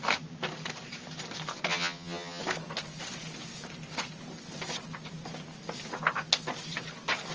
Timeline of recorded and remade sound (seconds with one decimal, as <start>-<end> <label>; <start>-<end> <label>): 0.0-1.7 recorded; 1.7-2.4 remade; 2.4-7.3 recorded